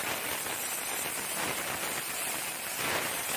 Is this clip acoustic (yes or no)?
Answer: yes